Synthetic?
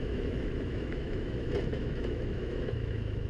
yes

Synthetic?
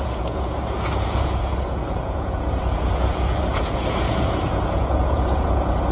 yes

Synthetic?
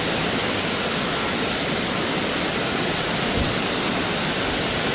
no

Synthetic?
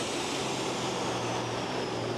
no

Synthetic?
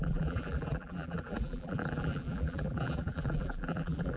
yes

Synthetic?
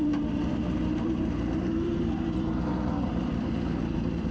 yes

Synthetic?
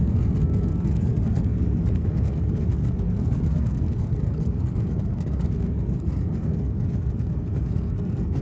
yes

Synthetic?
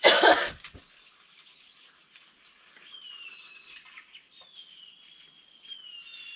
no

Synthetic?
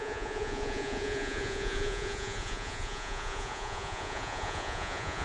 yes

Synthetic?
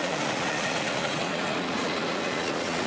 yes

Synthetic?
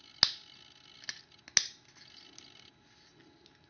no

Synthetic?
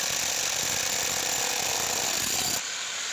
no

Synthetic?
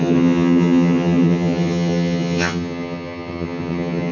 yes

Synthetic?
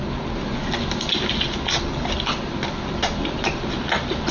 no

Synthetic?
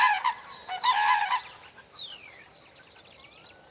no